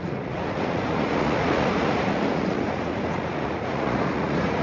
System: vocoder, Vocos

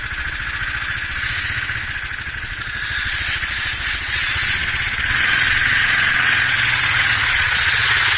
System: vocoder, Vocos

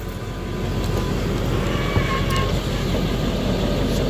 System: none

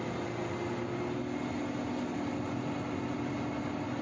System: none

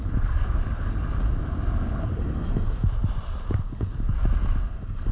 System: none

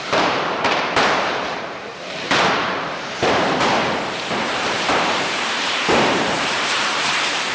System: vocoder, BigVGAN v2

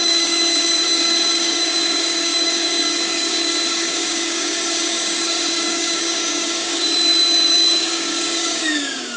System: codec, DAC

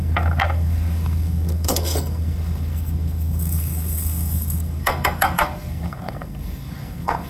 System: codec, SNAC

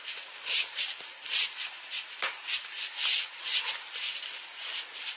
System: none